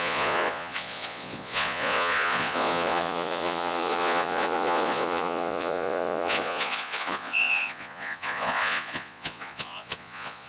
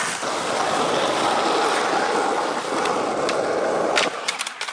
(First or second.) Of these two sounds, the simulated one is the first